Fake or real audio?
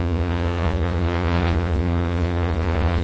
fake